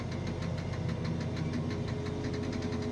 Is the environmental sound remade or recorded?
recorded